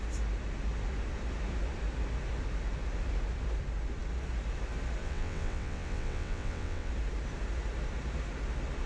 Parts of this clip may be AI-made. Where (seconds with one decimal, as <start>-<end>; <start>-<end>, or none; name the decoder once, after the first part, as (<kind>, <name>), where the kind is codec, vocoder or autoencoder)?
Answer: 5.0-6.9 (vocoder, WaveNeXt)